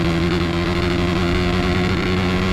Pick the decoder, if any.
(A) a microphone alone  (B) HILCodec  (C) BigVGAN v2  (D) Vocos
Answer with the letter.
A